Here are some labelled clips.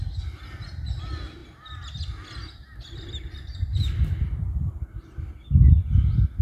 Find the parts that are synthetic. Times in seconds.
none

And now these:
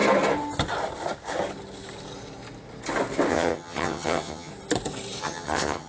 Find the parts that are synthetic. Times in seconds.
3.3-4.5 (vocoder, HiFi-GAN); 5.2-5.9

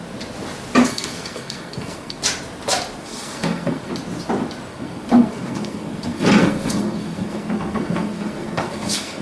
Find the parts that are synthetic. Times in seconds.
0.8-2.2 (codec, SNAC); 3.0-3.9; 4.7-9.2

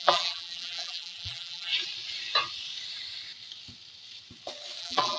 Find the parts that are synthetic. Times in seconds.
0.0-1.7 (vocoder, BigVGAN v2); 4.8-5.2

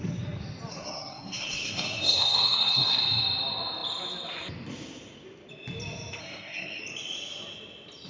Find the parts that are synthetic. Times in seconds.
0.7-3.0 (codec, SNAC); 6.2-6.8

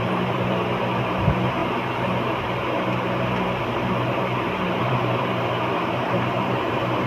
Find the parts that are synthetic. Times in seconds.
0.0-1.6 (vocoder, BigVGAN v2); 3.6-7.1

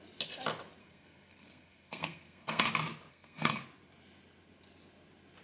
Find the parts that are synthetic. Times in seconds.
0.8-2.7 (codec, SNAC); 3.1-3.6